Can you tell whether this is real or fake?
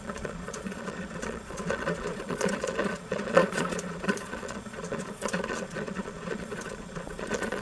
fake